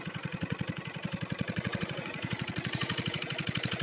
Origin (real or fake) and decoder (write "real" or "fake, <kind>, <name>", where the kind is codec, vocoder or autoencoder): fake, vocoder, Vocos